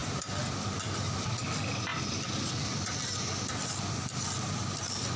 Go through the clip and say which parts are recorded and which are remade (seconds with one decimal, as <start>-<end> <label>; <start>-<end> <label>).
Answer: 0.0-0.8 remade; 0.8-1.9 recorded; 1.9-3.9 remade; 3.9-5.2 recorded